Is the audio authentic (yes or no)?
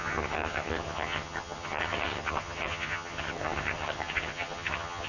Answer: no